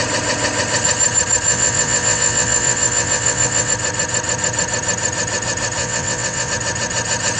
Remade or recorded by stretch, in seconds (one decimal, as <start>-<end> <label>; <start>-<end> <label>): 0.0-1.5 recorded; 1.5-3.7 remade; 3.7-5.8 recorded; 5.8-6.5 remade; 6.5-7.4 recorded